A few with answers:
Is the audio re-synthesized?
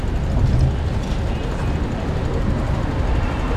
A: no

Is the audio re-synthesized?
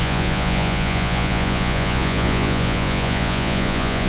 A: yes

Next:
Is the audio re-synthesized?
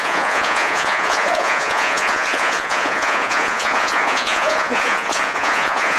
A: yes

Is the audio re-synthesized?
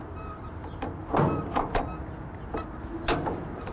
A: no